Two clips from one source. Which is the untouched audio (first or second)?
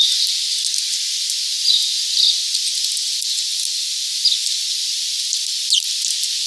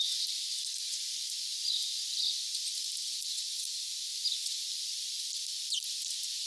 first